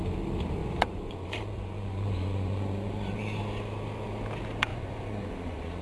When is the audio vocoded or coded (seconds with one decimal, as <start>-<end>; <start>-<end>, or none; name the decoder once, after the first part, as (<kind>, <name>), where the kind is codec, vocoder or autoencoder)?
0.6-3.4 (vocoder, Vocos); 4.7-5.8